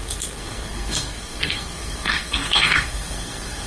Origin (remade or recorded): remade